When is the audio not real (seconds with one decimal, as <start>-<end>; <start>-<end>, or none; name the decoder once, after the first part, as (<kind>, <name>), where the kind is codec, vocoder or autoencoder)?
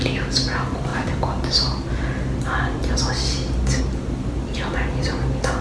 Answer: none